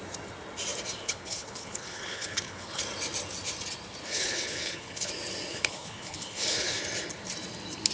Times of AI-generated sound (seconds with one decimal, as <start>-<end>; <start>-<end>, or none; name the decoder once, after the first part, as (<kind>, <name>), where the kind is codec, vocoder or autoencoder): 1.0-2.8 (codec, HILCodec); 4.0-5.1; 5.5-6.8